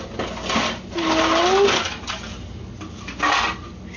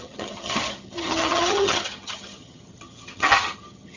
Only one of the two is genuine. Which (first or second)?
first